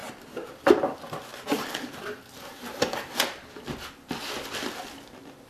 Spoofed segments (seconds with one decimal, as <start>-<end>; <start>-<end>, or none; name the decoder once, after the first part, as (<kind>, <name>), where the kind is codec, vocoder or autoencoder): 1.3-1.9 (vocoder, BigVGAN v2); 2.5-3.2